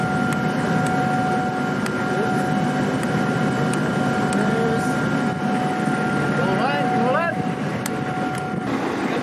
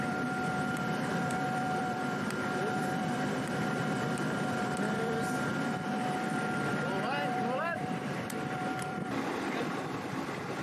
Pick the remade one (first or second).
second